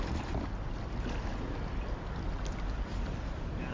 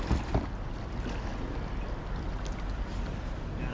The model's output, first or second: first